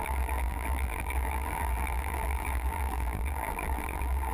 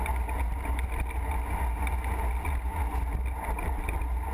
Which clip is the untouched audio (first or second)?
second